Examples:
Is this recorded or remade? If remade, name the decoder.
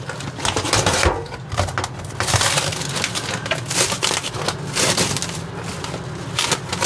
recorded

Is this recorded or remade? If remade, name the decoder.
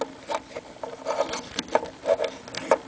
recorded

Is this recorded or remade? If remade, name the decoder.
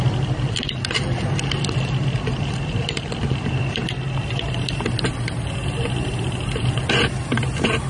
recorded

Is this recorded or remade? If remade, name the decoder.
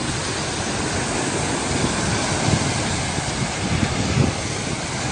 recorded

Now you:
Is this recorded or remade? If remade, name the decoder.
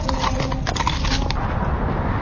recorded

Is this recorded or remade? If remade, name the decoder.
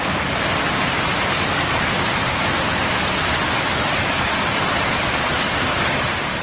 recorded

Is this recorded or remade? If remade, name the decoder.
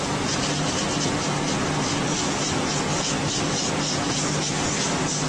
recorded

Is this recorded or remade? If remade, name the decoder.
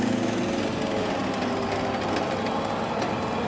recorded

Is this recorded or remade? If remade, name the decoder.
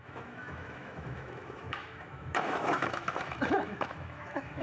remade, autoencoder, DAC-VAE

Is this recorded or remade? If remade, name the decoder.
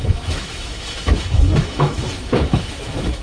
remade, autoencoder, DAC-VAE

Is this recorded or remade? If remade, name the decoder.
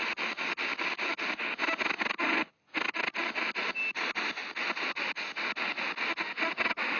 recorded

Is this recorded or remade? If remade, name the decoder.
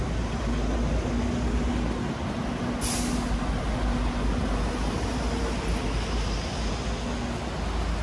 recorded